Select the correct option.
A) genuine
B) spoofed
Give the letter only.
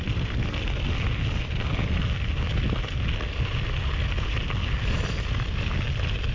A